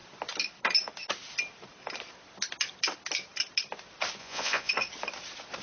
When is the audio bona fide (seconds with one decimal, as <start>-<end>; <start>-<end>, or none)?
0.0-4.2; 4.7-5.6